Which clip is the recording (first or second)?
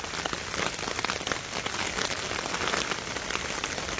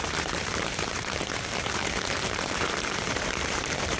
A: first